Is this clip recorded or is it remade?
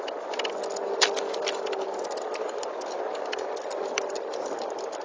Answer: recorded